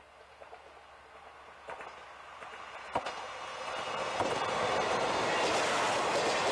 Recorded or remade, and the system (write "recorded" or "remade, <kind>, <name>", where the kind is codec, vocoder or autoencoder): recorded